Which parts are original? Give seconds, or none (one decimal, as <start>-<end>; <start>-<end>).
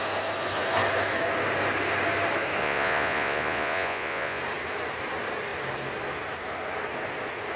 0.0-2.6; 4.4-7.6